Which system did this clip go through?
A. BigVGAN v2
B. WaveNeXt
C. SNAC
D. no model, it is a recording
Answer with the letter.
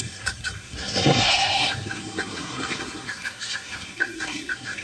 C